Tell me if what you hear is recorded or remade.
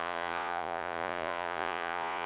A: remade